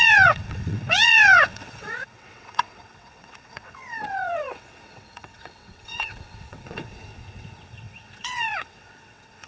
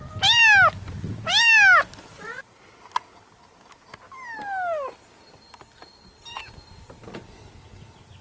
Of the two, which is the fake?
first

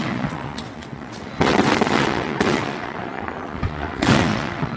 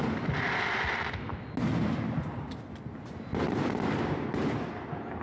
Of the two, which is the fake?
first